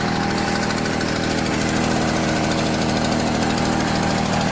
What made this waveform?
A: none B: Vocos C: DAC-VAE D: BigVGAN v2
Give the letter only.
A